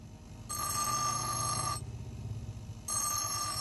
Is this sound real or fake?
real